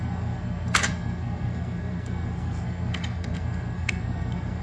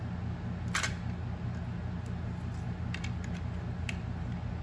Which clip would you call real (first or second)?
second